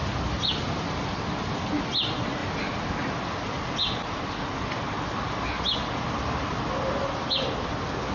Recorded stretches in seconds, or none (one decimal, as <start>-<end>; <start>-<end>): 0.0-8.1